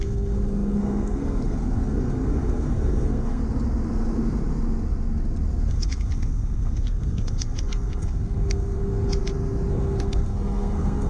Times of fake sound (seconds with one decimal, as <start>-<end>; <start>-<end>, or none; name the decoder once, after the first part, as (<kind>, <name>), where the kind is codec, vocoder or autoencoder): 0.0-3.4 (codec, SNAC); 5.7-9.2; 9.7-11.1